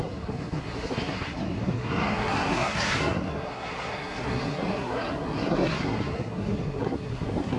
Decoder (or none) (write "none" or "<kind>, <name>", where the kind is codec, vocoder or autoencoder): codec, SNAC